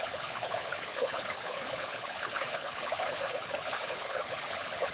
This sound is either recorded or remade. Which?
remade